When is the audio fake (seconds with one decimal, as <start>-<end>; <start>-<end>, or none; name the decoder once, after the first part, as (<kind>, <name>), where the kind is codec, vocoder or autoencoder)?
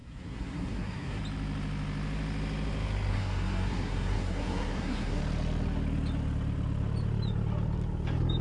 0.0-1.2 (codec, SNAC); 3.1-5.2